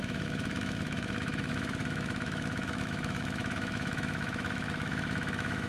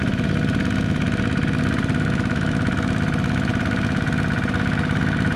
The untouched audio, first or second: second